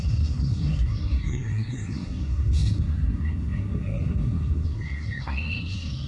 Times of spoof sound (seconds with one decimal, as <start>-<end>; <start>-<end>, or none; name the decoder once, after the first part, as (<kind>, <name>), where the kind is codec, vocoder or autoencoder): 0.0-6.1 (codec, SNAC)